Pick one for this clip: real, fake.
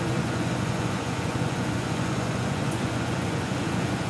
fake